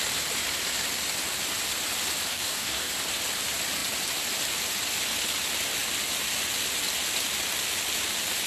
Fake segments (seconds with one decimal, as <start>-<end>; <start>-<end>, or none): 2.3-2.9